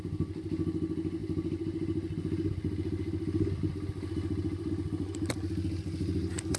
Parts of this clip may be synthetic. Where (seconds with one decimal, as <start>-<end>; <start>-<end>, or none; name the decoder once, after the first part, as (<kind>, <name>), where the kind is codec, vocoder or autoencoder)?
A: none